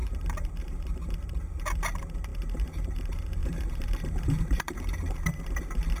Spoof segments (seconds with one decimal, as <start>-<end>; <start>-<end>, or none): 0.0-1.6; 3.4-4.8